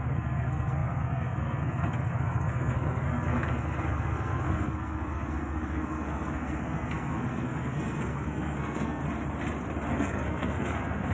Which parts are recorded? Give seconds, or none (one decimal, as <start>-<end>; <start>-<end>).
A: 9.0-9.9